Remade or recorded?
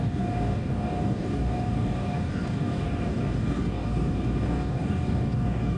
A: remade